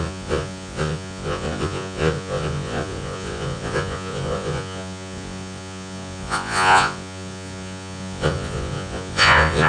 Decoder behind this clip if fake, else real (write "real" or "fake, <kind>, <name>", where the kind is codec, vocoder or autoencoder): fake, vocoder, Vocos